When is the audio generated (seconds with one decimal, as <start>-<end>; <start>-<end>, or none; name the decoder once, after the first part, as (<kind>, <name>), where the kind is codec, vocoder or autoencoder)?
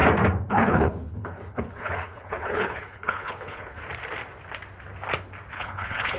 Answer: 0.5-3.8 (codec, HILCodec); 5.5-6.2